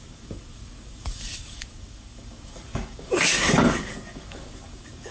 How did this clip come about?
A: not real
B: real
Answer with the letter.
A